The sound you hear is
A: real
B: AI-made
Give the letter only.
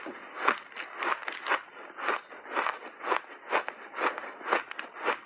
A